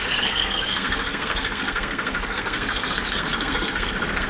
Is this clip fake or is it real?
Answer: fake